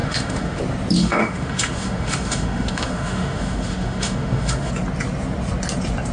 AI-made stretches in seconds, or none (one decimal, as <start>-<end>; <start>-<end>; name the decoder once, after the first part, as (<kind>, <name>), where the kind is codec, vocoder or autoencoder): 0.0-0.6 (autoencoder, DAC-VAE); 1.0-4.7